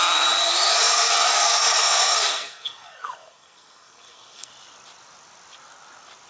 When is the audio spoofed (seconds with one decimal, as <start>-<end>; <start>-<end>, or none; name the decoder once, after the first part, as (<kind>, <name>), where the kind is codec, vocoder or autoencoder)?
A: 0.7-4.5 (codec, SNAC)